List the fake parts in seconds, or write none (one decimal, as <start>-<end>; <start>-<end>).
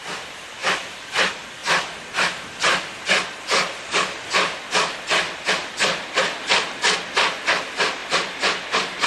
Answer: 0.6-1.1; 8.0-9.1